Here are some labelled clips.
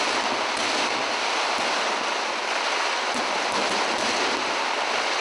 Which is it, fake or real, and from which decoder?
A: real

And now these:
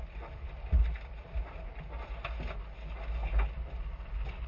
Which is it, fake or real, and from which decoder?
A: real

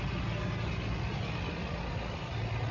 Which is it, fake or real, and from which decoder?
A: real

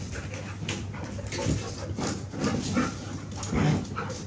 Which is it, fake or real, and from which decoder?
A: real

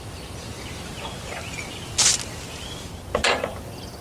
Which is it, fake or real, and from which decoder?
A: real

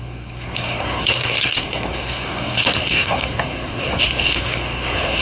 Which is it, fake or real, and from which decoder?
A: fake, codec, SNAC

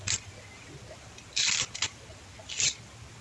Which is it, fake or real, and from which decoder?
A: real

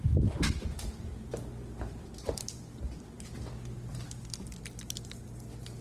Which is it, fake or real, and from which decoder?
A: real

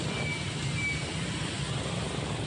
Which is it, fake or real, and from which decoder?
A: real